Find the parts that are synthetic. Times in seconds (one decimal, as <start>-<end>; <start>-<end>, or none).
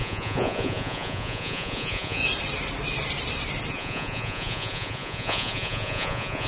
0.0-2.2; 3.7-6.5